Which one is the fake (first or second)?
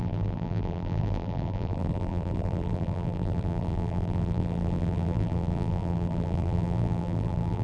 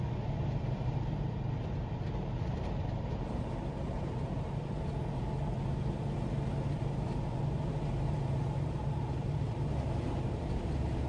first